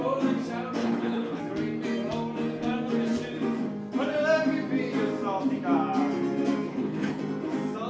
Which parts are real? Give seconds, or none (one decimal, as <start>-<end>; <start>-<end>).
0.0-0.8; 1.4-6.7; 7.2-7.9